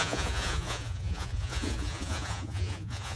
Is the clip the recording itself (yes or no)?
no